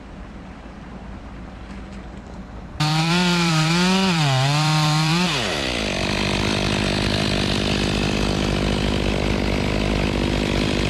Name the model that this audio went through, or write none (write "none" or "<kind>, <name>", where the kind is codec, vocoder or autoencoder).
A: vocoder, BigVGAN v2